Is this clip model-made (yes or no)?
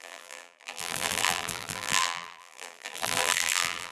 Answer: yes